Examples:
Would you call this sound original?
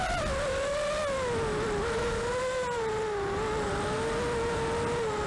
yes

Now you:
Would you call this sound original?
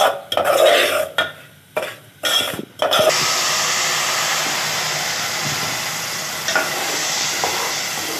yes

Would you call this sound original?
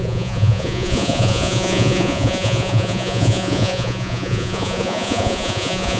no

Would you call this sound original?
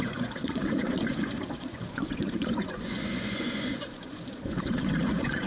no